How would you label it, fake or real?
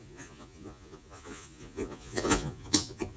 fake